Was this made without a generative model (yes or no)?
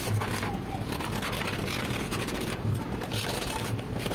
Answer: no